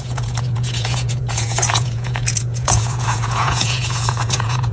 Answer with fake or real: fake